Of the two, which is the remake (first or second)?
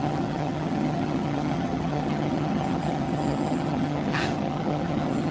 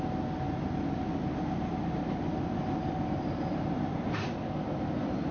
first